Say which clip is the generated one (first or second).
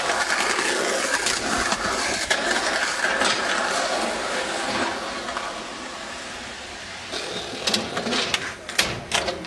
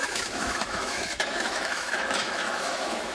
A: second